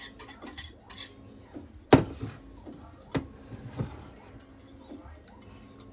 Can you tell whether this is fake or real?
real